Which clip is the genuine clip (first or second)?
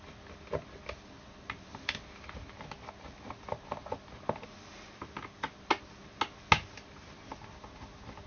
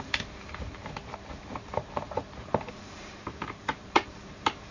first